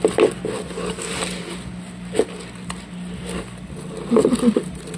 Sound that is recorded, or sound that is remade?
recorded